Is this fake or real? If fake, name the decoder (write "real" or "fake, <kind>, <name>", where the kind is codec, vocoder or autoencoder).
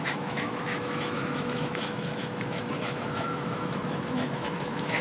fake, autoencoder, DAC-VAE